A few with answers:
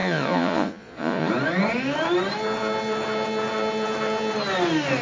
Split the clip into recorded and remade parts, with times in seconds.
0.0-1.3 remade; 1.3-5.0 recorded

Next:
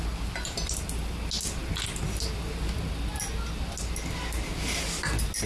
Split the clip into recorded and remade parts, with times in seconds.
0.0-5.5 recorded

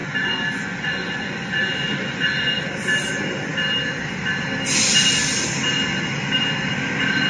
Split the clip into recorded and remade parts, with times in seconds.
0.0-2.6 remade; 2.6-7.3 recorded

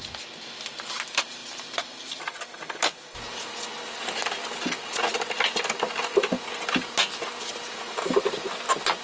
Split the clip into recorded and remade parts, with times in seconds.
0.0-9.0 recorded

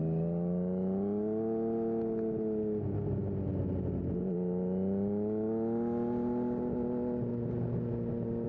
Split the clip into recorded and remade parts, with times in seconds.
0.0-8.5 recorded

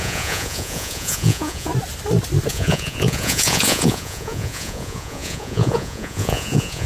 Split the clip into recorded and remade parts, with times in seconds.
0.0-1.7 remade; 1.7-2.5 recorded; 2.5-6.9 remade